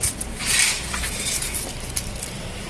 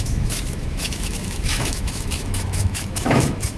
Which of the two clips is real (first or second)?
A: first